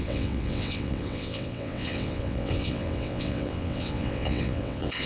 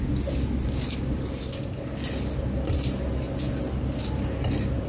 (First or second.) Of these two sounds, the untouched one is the second